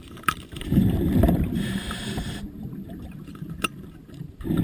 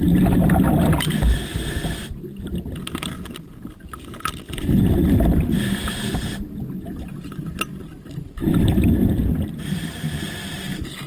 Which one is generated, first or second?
first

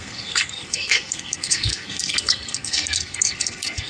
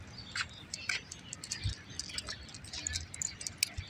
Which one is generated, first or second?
first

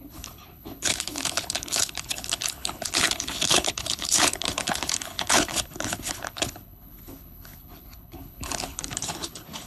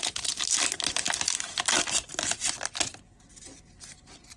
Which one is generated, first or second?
first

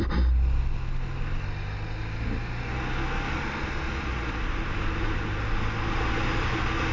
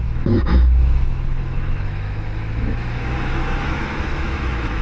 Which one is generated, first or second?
second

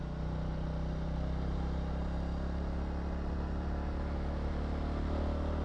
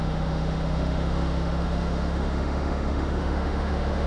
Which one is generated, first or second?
second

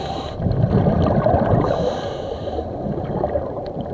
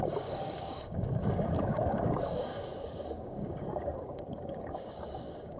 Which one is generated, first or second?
second